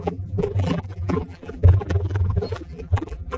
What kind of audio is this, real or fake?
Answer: fake